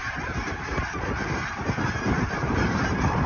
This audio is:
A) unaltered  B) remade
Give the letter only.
B